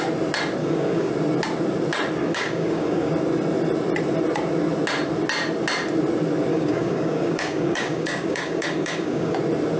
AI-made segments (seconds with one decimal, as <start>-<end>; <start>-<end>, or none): 0.6-1.1; 2.2-3.1; 6.5-9.4